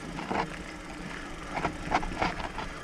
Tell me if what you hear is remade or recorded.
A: recorded